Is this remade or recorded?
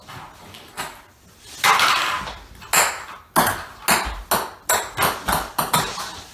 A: recorded